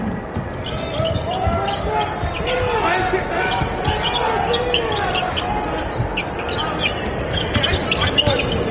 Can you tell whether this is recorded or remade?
recorded